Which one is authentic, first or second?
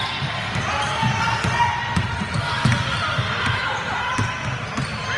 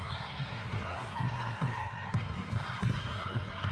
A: first